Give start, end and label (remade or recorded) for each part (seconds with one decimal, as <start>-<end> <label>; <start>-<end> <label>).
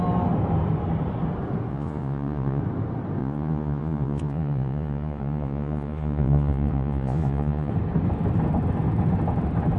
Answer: 0.0-1.7 recorded; 1.7-2.6 remade; 2.6-3.2 recorded; 3.2-7.7 remade; 7.7-9.8 recorded